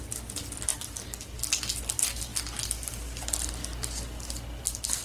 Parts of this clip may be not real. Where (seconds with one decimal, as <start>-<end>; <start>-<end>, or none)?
none